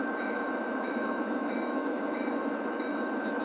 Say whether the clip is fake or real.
fake